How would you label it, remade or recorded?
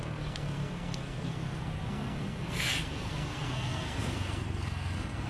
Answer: remade